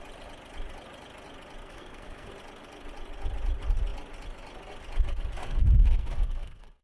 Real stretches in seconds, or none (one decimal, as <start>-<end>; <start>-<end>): 0.0-1.6; 2.3-5.4